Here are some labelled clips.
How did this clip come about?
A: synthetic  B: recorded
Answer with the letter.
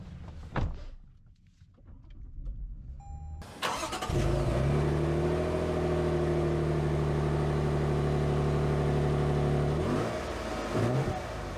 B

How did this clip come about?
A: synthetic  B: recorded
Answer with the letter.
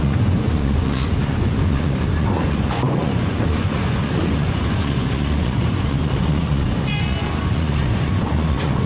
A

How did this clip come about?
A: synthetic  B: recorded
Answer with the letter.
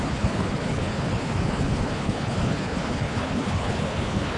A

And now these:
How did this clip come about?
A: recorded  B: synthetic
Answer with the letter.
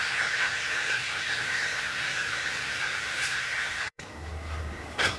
B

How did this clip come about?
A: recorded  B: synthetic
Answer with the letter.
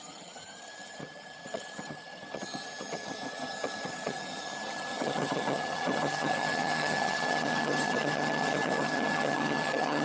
B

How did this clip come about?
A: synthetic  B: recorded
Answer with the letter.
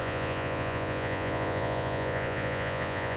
A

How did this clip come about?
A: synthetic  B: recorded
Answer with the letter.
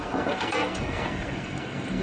A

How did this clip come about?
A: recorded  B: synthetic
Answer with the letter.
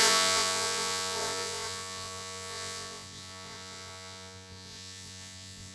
B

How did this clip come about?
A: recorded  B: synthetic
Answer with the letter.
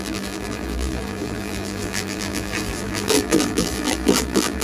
B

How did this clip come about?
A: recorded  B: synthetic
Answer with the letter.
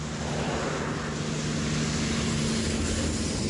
A